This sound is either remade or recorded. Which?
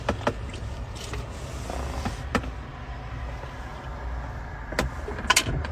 recorded